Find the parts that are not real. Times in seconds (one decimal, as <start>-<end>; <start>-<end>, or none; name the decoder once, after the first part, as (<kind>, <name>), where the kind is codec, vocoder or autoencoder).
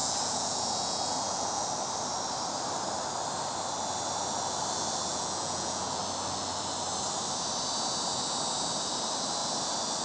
0.0-1.6 (vocoder, Vocos); 5.1-6.0